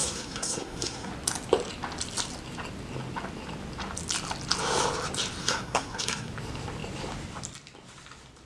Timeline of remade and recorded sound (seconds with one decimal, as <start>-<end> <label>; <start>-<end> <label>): 0.0-1.1 remade; 1.1-5.4 recorded; 5.4-6.3 remade; 6.3-8.5 recorded